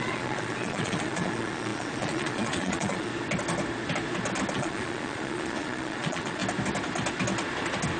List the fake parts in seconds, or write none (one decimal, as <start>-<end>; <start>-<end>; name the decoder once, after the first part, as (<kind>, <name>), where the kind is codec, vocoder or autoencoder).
0.0-3.1 (vocoder, Vocos); 4.5-6.4